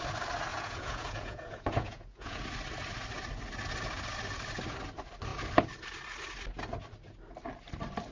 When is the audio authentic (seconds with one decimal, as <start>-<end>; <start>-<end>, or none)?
0.0-0.5; 2.4-8.1

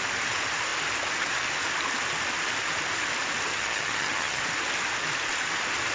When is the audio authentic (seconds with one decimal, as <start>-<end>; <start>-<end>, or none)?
0.0-3.5; 4.4-5.9

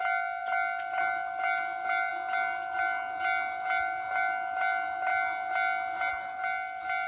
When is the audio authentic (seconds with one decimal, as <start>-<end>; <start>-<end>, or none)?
0.0-7.1

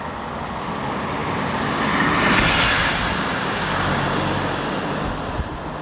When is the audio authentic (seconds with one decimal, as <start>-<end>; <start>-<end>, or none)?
0.0-1.2; 2.0-5.8

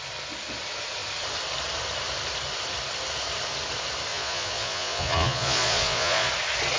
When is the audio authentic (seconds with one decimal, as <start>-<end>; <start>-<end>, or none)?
0.0-4.1; 6.3-6.8